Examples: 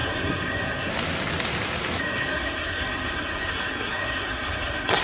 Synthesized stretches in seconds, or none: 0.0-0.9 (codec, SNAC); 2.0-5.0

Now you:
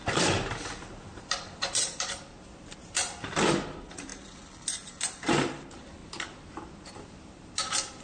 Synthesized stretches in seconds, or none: 0.0-4.1 (vocoder, BigVGAN v2); 5.0-6.0; 6.9-8.0

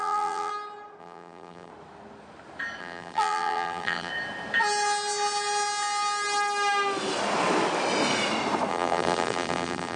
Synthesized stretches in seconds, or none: 0.0-0.5 (vocoder, BigVGAN v2); 1.0-1.7; 2.8-4.1; 8.7-10.0